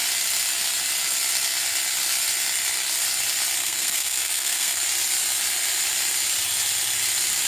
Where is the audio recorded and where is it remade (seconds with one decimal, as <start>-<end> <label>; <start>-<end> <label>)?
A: 0.0-3.6 recorded; 3.6-4.8 remade; 4.8-7.5 recorded